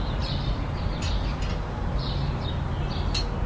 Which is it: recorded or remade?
recorded